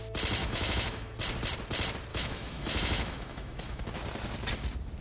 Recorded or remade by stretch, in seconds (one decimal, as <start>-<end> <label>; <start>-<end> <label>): 0.0-0.4 recorded; 0.4-1.2 remade; 1.2-2.1 recorded; 2.1-3.8 remade; 3.8-5.0 recorded